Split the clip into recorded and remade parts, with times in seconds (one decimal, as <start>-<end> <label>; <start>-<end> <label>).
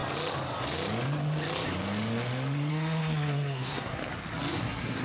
0.0-2.7 recorded; 2.7-4.0 remade; 4.0-4.5 recorded; 4.5-5.0 remade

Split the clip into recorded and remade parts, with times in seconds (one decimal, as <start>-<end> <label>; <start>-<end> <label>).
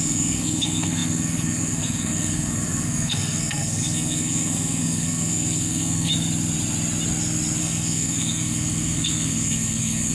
0.0-6.1 remade; 6.1-7.6 recorded; 7.6-10.1 remade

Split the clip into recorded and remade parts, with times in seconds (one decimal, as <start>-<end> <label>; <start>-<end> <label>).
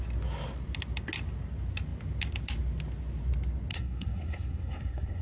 0.0-3.7 recorded; 3.7-5.2 remade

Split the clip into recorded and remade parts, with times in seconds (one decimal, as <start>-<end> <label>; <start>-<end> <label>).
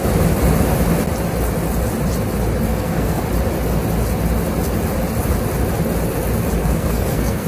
0.0-2.7 recorded; 2.7-3.2 remade; 3.2-6.6 recorded; 6.6-7.5 remade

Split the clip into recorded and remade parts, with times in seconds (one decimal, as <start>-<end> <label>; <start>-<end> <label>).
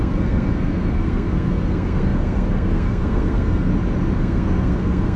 0.0-3.7 remade; 3.7-4.2 recorded; 4.2-5.2 remade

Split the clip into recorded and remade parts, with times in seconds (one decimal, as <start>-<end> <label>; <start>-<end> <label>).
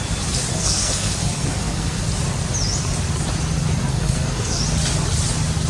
0.0-0.5 recorded; 0.5-2.0 remade; 2.0-3.9 recorded; 3.9-4.6 remade; 4.6-5.7 recorded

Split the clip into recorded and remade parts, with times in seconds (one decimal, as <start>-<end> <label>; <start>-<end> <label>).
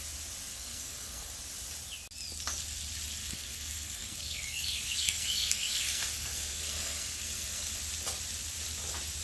0.0-0.5 recorded; 0.5-1.3 remade; 1.3-3.2 recorded; 3.2-7.7 remade; 7.7-9.2 recorded